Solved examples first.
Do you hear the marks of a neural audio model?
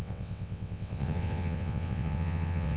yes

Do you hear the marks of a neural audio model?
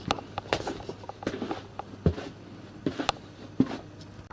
no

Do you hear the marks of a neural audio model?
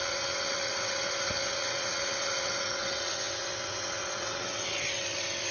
yes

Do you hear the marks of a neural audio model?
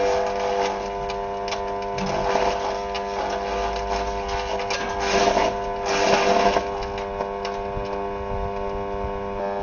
no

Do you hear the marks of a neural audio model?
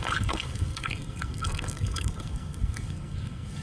yes